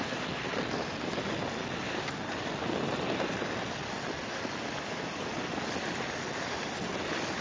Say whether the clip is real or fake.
real